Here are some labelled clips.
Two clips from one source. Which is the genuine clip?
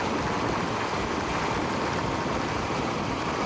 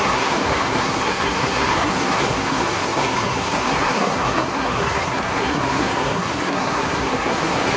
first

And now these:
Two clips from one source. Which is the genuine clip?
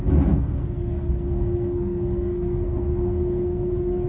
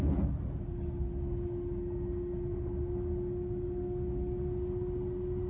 second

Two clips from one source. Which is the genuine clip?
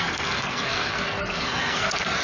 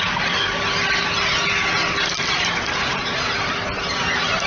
second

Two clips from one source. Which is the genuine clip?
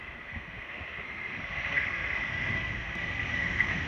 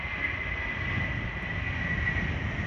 second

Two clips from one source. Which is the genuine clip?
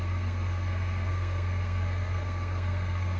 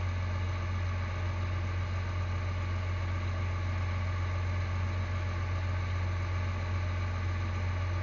second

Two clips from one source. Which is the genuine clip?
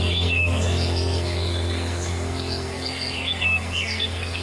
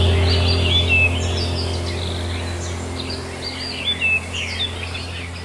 second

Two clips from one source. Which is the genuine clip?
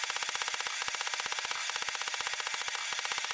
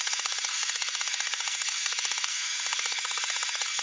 first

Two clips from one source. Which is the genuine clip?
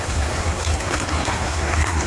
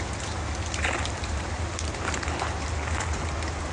second